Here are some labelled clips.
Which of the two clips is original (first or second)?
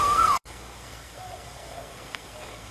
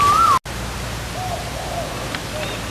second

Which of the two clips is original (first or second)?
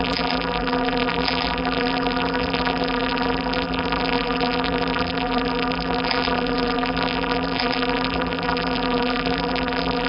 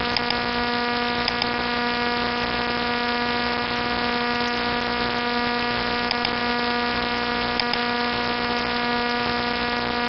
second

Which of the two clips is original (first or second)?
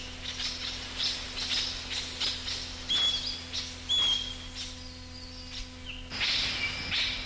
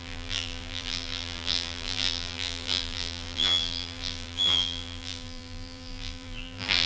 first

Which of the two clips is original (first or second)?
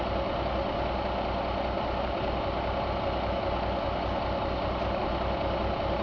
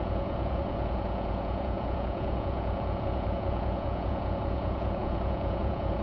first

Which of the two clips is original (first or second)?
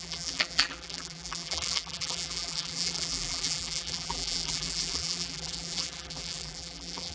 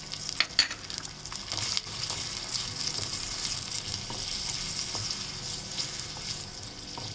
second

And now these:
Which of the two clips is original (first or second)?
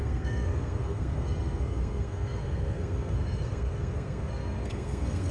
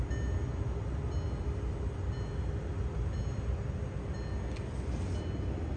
second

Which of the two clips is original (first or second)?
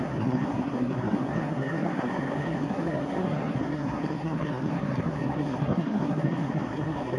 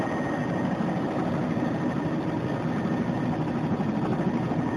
second